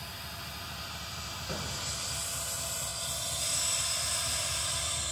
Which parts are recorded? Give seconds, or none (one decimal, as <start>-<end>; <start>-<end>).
0.0-5.1

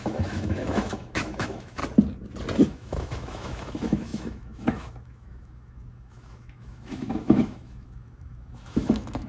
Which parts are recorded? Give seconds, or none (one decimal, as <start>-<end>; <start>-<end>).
1.8-2.7

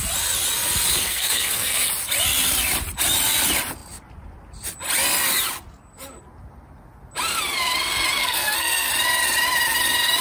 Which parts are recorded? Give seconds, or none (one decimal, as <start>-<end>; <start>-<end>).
0.0-0.9; 1.9-8.2; 8.9-10.2